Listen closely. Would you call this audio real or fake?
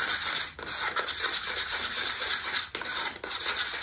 real